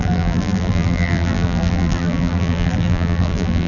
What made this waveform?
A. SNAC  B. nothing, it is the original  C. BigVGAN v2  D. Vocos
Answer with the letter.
C